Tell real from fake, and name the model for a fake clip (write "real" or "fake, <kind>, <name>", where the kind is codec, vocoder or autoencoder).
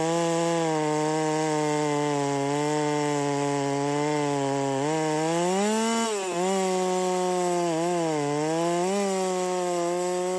real